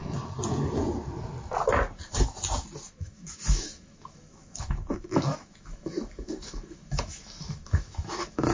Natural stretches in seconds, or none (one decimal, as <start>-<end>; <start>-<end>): 0.0-2.9